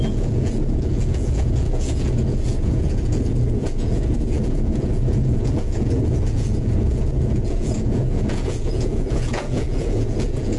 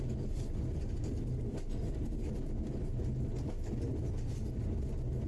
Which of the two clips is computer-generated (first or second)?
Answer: first